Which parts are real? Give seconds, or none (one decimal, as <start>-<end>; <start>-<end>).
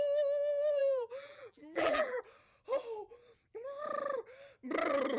0.0-0.8; 2.2-5.2